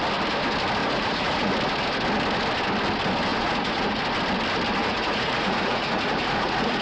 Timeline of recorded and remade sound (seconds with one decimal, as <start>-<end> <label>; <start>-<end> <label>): 0.0-0.8 recorded; 0.8-1.5 remade; 1.5-3.3 recorded; 3.3-4.0 remade; 4.0-4.8 recorded; 4.8-6.8 remade